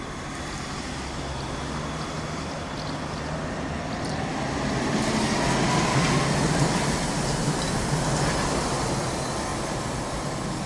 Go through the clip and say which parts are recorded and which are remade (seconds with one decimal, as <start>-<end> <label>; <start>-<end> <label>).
0.0-10.7 recorded